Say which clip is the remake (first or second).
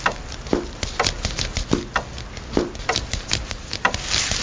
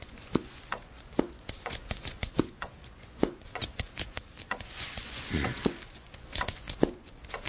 second